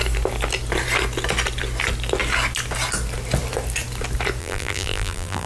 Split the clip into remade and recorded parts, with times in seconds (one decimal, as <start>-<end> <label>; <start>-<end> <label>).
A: 0.0-4.4 recorded; 4.4-5.5 remade